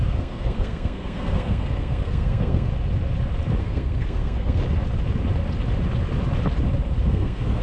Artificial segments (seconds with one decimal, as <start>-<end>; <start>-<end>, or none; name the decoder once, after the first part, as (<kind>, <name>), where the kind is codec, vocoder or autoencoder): 0.0-2.7 (codec, SNAC); 3.6-4.6; 7.0-7.6